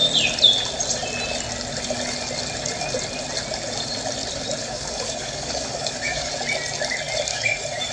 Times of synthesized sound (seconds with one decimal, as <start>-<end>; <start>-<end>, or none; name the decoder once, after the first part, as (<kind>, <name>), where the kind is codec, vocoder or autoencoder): 4.6-6.3 (codec, DAC); 7.3-7.9